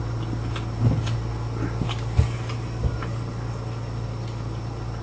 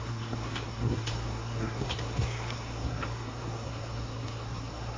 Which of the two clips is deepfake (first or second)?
second